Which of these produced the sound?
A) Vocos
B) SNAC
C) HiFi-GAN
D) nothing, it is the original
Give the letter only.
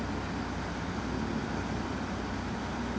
D